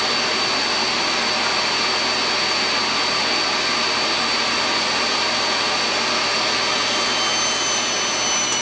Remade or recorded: recorded